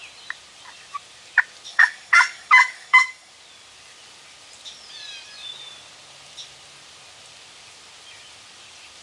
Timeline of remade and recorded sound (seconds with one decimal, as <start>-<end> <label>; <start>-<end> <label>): 0.0-1.7 recorded; 1.7-3.3 remade; 3.3-9.0 recorded